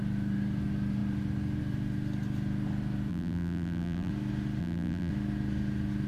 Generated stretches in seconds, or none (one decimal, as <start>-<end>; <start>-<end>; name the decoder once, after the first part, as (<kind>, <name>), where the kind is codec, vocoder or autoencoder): 3.1-4.1 (vocoder, BigVGAN v2); 4.6-5.1